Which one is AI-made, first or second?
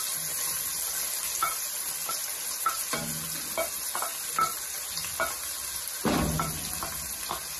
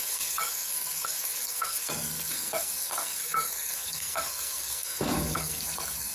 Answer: second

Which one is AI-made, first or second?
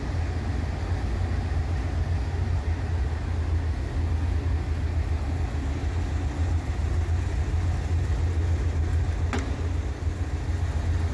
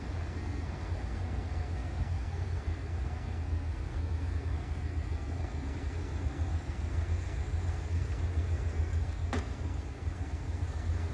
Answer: second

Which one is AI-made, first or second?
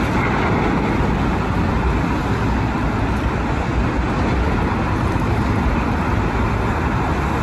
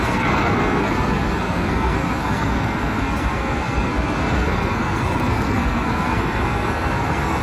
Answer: second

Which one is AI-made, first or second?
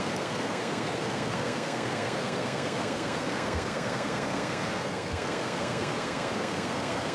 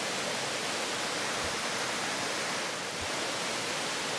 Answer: first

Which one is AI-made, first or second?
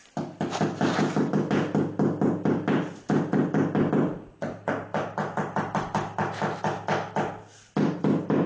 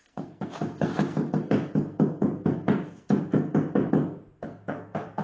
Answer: second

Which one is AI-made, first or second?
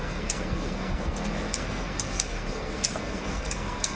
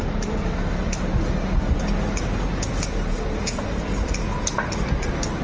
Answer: first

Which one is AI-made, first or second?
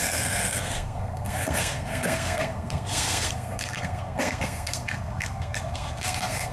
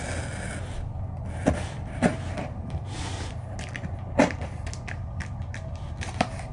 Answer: first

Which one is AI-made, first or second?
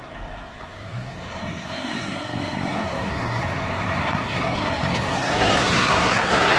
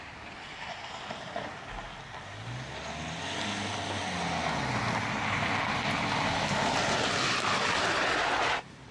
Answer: first